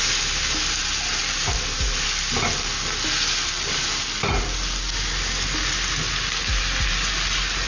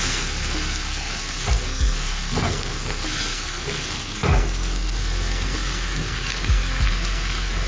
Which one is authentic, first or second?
first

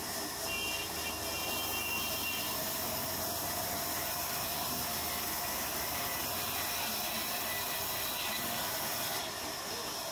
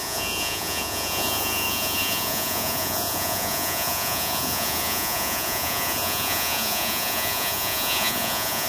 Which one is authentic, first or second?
first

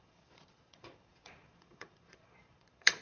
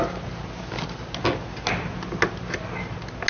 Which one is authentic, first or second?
second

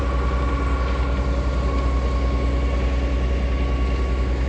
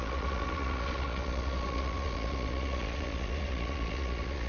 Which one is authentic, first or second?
first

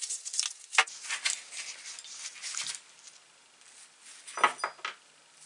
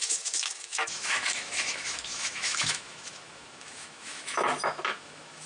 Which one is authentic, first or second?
first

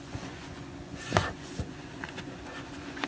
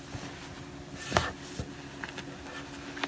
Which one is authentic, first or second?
second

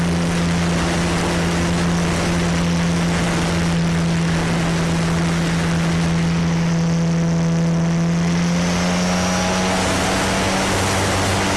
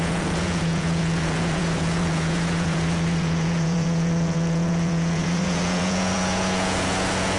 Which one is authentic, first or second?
first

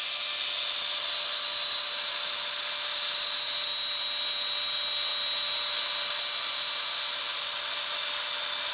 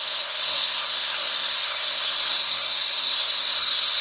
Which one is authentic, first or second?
first